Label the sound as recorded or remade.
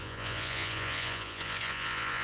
remade